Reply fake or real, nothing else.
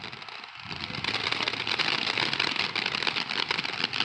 real